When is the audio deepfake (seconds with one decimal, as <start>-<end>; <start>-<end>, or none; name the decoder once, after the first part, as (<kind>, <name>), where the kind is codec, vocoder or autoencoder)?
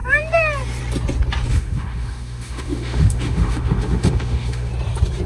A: 1.5-4.7 (autoencoder, DAC-VAE)